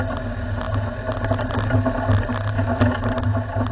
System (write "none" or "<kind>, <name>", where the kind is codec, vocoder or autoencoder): none